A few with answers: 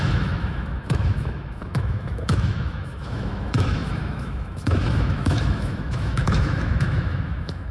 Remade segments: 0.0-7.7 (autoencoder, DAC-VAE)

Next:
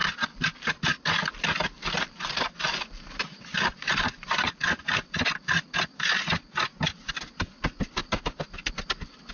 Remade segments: 0.0-4.6 (vocoder, BigVGAN v2); 8.0-8.7

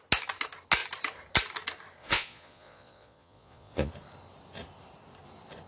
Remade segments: 2.0-3.9 (vocoder, Vocos)

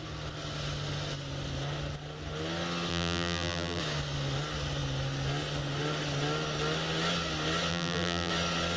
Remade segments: 2.9-3.8 (vocoder, BigVGAN v2); 7.7-8.3

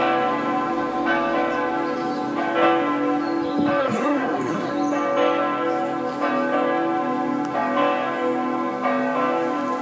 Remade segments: 3.8-4.7 (codec, SNAC)

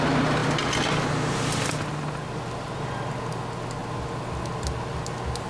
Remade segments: none

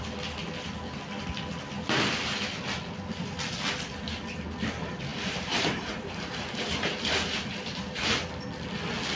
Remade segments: 5.1-8.3 (vocoder, BigVGAN v2)